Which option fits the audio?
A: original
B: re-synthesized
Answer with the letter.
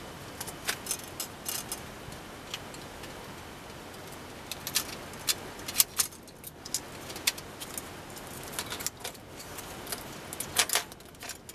A